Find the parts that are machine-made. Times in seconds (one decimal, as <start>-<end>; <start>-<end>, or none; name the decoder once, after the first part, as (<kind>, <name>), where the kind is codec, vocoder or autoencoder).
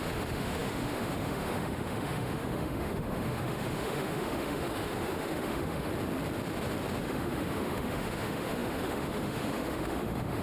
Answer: 0.0-5.9 (autoencoder, DAC-VAE); 7.0-10.4